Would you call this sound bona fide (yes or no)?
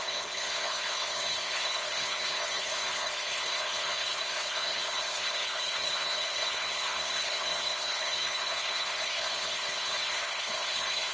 no